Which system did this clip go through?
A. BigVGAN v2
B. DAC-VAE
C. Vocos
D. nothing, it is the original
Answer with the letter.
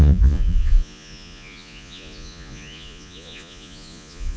C